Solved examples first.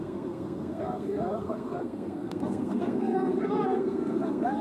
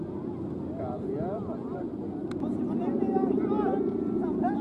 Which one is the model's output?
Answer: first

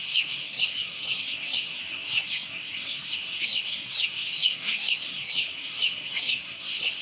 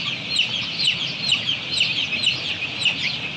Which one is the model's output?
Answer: first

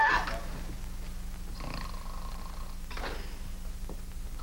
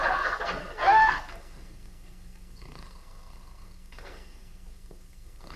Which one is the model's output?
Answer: second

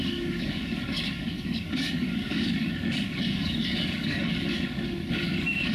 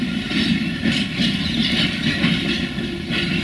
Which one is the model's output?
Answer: first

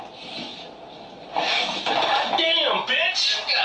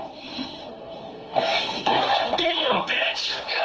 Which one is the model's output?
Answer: second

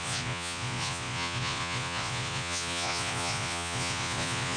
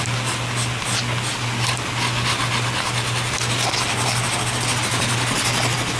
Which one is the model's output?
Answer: first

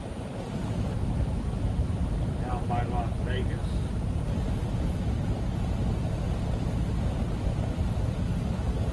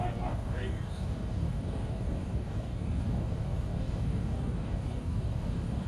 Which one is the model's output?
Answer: second